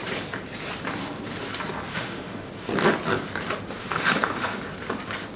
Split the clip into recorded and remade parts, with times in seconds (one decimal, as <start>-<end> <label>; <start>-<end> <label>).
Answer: 0.0-1.9 recorded; 1.9-2.5 remade; 2.5-3.8 recorded; 3.8-4.6 remade; 4.6-5.4 recorded

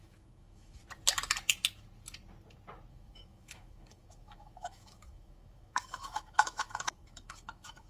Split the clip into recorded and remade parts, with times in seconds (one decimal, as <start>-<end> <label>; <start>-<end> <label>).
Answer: 0.0-0.8 remade; 0.8-2.9 recorded; 2.9-7.9 remade

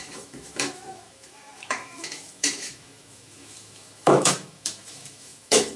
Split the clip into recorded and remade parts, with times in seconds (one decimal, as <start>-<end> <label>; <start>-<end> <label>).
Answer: 0.0-5.8 remade

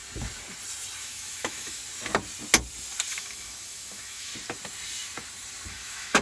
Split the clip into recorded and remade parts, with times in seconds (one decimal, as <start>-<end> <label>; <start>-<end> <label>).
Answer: 0.0-1.0 recorded; 1.0-1.8 remade; 1.8-3.1 recorded; 3.1-4.3 remade; 4.3-5.7 recorded; 5.7-6.2 remade

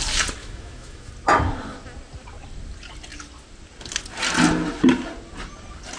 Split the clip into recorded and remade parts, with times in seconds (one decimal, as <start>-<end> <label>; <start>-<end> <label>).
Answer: 0.0-0.4 recorded; 0.4-1.1 remade; 1.1-6.0 recorded

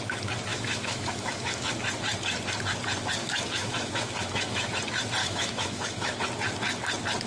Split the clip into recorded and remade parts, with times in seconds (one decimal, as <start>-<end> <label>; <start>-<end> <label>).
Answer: 0.0-0.5 recorded; 0.5-1.7 remade; 1.7-3.2 recorded; 3.2-4.7 remade; 4.7-5.2 recorded; 5.2-6.2 remade; 6.2-7.3 recorded

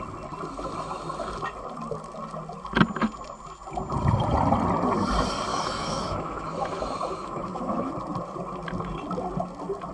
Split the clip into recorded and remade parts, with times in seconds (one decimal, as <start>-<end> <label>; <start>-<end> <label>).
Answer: 0.0-5.5 recorded; 5.5-7.9 remade; 7.9-9.9 recorded